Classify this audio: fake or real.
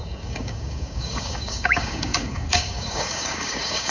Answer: fake